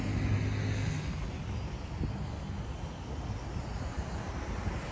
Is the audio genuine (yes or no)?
yes